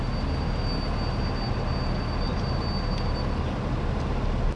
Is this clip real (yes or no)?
yes